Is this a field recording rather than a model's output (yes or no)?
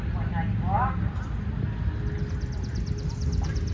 yes